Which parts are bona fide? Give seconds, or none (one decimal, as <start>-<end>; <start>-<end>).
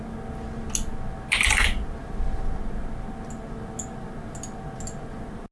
0.0-5.5